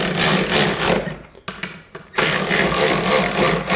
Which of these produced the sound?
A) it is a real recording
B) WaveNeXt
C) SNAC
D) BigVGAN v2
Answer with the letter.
A